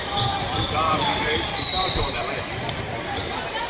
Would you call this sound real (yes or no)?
no